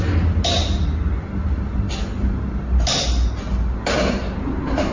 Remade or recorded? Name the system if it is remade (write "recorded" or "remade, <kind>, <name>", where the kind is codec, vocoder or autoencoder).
recorded